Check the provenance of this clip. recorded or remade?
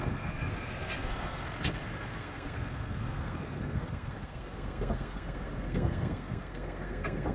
remade